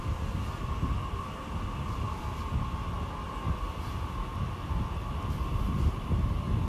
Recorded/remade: recorded